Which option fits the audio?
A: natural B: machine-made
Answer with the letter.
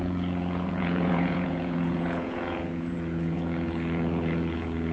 B